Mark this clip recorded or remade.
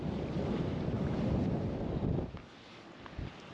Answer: recorded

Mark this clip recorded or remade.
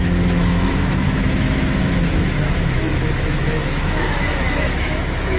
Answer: remade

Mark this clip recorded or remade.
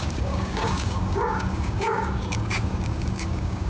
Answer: remade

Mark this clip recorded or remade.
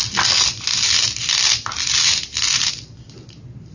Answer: recorded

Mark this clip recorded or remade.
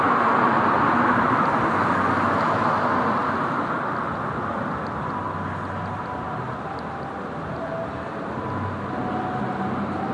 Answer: recorded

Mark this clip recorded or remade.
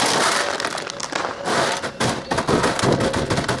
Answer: recorded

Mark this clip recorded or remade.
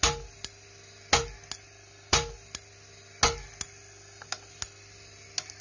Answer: recorded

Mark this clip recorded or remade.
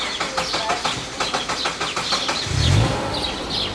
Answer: recorded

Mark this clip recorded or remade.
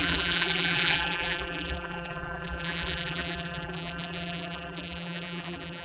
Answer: remade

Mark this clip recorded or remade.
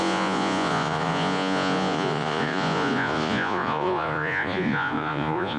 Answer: remade